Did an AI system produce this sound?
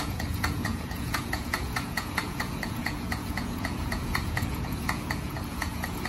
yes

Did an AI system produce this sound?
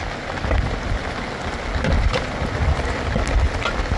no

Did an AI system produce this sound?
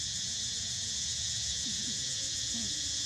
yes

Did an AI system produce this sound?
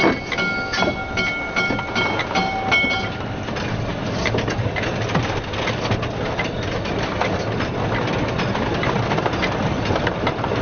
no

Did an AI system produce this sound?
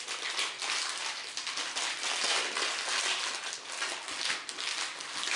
no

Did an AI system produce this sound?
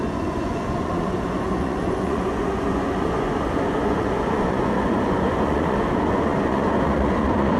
yes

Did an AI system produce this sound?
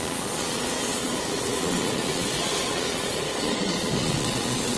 yes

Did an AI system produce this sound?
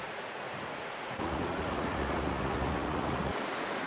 yes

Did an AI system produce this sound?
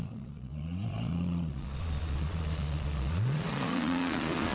yes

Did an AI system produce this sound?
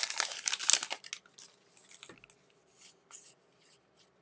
no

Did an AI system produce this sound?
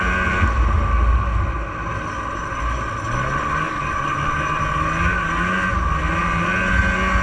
no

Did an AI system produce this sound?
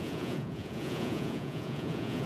yes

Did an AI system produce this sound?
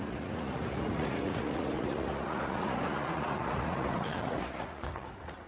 yes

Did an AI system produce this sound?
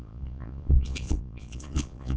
yes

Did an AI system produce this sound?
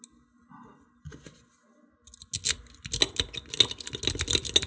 no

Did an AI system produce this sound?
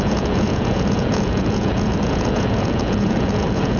yes